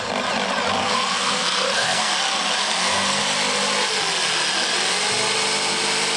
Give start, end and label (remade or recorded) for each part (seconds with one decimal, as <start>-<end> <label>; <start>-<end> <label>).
0.0-0.8 recorded; 0.8-2.1 remade; 2.1-2.6 recorded; 2.6-3.2 remade; 3.2-6.2 recorded